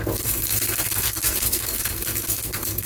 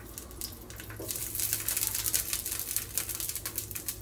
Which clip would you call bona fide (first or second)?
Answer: second